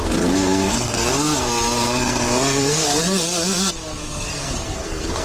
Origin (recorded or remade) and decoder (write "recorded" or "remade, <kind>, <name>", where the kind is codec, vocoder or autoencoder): remade, codec, SNAC